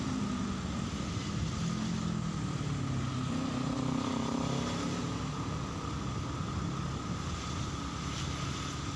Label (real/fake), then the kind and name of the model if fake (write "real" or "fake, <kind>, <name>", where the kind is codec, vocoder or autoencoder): real